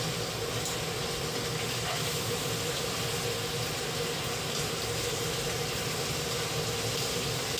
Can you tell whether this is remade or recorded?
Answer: recorded